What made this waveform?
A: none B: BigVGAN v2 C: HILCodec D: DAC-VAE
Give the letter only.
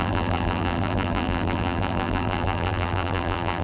B